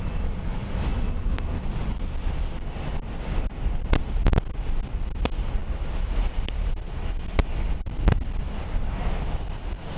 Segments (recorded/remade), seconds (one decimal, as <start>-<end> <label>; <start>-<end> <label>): 0.0-10.0 recorded